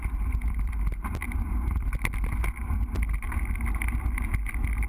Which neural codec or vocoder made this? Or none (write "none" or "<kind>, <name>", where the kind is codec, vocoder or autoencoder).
none